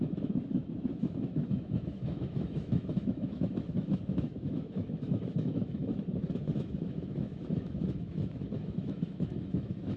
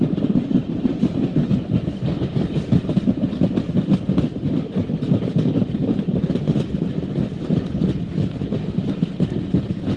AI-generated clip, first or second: first